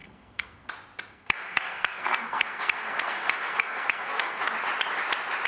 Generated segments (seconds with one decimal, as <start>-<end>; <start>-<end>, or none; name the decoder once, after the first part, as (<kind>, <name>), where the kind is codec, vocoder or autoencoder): 0.0-0.7 (codec, SNAC); 1.1-4.4